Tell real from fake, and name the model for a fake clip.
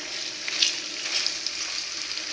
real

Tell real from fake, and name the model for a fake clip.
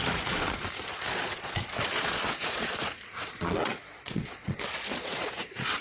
fake, vocoder, Vocos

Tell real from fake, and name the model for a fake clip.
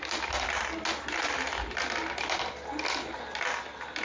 real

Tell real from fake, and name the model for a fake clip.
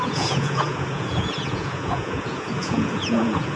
fake, vocoder, Vocos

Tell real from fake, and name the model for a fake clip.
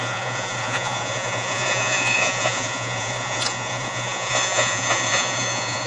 fake, vocoder, Vocos